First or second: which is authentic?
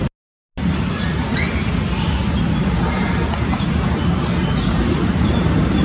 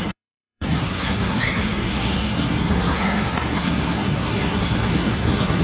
first